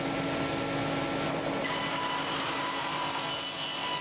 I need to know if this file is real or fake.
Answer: real